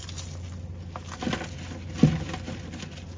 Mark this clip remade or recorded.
recorded